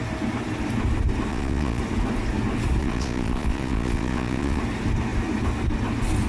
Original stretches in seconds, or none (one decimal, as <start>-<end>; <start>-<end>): 0.0-1.3; 1.8-2.8; 4.6-6.3